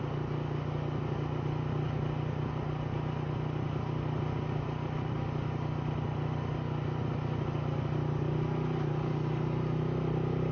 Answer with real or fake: real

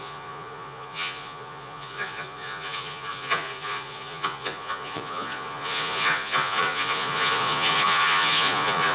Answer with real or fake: fake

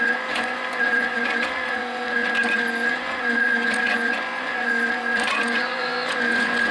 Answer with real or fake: fake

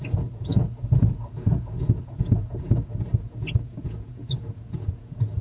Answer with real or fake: fake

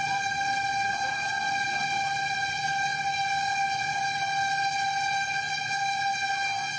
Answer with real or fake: real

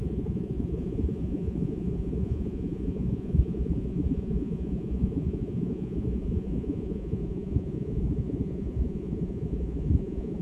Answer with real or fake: fake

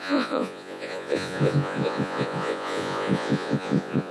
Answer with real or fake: fake